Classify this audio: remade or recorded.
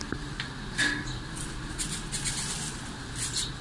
recorded